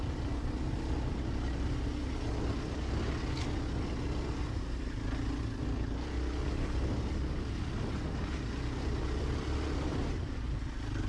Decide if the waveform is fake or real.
real